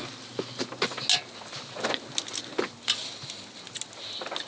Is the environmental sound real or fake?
real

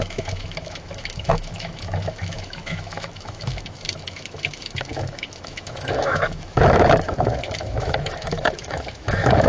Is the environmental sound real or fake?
fake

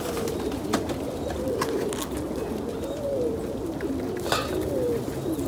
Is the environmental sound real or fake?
real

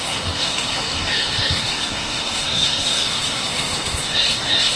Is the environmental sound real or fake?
fake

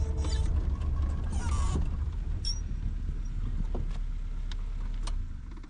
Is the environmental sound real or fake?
real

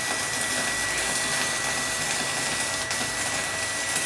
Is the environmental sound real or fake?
real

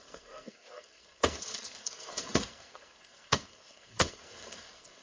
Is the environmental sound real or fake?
fake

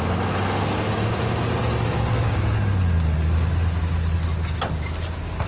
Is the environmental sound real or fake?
real